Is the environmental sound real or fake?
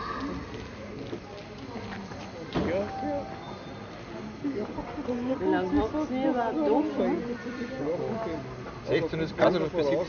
real